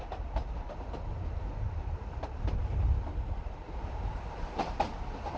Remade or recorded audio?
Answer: recorded